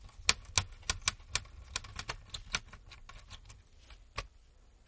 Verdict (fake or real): real